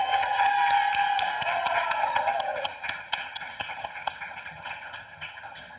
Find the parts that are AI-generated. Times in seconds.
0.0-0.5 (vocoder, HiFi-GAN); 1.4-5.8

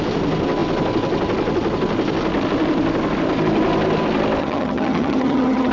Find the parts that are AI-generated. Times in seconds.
4.4-5.7 (vocoder, HiFi-GAN)

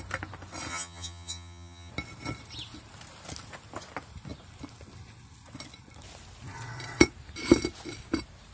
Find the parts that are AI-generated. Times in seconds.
0.7-1.9 (vocoder, HiFi-GAN)